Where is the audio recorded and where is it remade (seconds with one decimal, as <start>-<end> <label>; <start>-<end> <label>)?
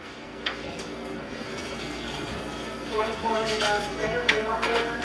0.0-5.0 remade